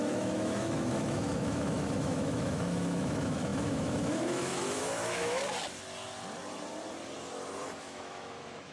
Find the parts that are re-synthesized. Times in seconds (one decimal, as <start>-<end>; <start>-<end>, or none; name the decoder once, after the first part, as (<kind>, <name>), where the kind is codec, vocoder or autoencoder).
0.0-5.4 (autoencoder, DAC-VAE); 7.8-8.7